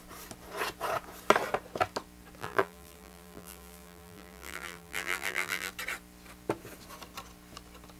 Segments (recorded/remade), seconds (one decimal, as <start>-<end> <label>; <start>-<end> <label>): 0.0-2.4 recorded; 2.4-5.7 remade; 5.7-8.0 recorded

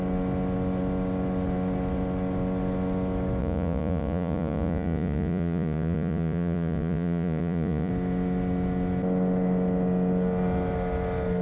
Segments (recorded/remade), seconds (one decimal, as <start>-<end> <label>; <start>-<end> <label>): 0.0-3.4 recorded; 3.4-7.9 remade; 7.9-11.4 recorded

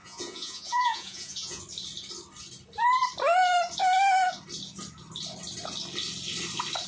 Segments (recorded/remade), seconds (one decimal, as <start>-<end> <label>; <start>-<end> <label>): 0.0-1.6 remade; 1.6-6.9 recorded

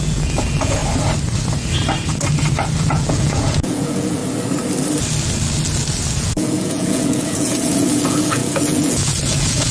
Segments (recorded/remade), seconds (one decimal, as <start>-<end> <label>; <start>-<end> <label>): 0.0-0.8 remade; 0.8-2.8 recorded; 2.8-4.2 remade; 4.2-6.2 recorded; 6.2-9.7 remade